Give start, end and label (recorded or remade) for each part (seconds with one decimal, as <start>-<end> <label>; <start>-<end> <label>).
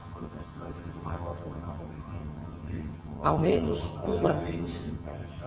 0.0-5.5 remade